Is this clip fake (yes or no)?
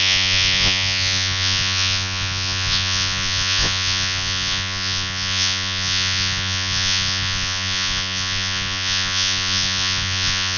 yes